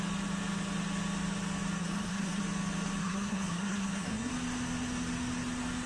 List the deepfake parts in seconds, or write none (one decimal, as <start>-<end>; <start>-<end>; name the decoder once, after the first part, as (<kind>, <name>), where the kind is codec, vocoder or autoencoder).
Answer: 1.8-2.4 (codec, SNAC); 3.0-4.3